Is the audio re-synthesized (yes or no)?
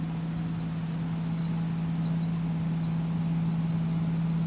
no